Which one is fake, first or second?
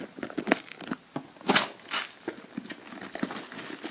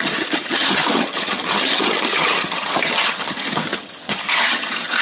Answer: second